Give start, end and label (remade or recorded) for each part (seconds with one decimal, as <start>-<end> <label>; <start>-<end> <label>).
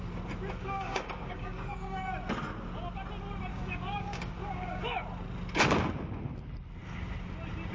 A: 0.0-0.6 recorded; 0.6-2.0 remade; 2.0-3.5 recorded; 3.5-4.9 remade; 4.9-7.7 recorded